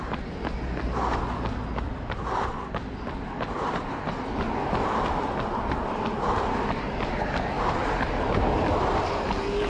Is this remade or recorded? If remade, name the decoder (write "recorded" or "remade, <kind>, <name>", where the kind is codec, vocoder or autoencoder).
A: recorded